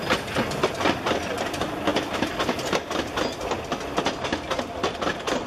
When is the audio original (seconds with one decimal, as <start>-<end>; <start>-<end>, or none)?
0.0-5.5